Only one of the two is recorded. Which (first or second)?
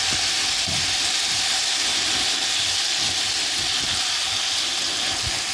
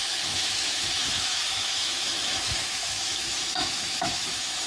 first